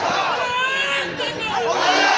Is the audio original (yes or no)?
yes